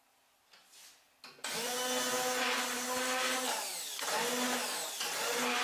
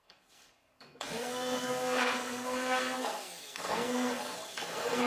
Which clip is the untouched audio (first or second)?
first